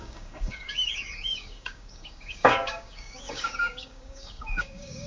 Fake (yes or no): yes